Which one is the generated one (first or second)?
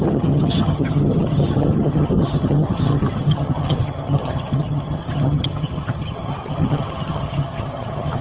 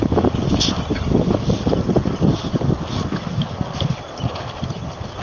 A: first